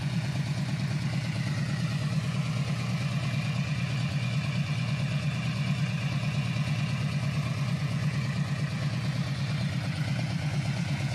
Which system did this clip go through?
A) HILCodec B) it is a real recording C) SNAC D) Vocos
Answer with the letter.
D